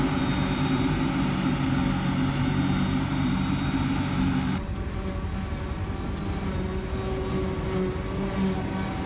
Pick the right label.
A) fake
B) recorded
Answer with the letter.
B